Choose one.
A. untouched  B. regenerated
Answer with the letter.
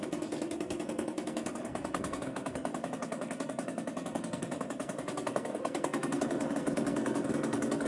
B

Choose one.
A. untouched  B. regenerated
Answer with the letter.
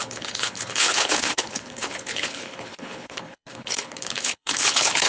B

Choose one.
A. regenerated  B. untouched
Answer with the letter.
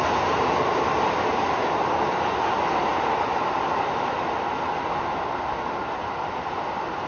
B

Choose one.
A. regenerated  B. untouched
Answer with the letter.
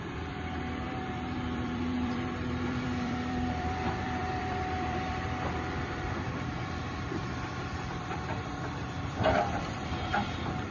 A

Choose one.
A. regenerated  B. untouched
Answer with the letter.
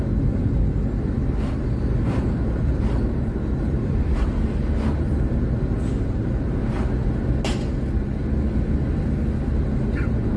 B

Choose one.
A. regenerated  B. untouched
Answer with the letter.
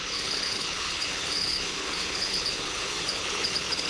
A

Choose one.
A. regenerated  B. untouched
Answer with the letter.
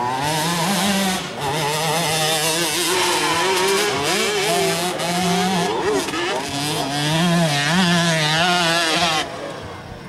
B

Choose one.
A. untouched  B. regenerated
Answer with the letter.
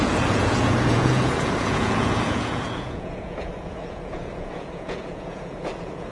B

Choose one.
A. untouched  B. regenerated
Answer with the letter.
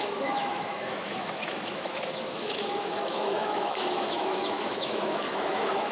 B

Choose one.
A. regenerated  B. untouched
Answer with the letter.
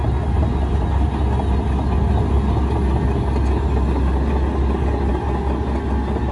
B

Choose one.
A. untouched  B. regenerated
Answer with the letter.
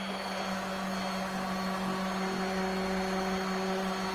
A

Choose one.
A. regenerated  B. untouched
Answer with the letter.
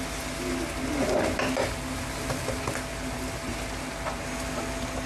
B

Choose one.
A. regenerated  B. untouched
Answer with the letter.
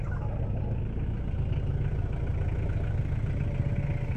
B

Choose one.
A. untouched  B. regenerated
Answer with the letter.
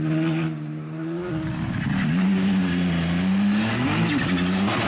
A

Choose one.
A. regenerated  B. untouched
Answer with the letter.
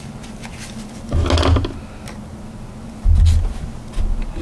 B